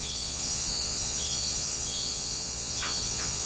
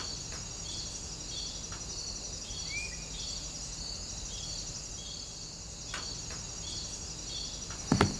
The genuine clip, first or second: second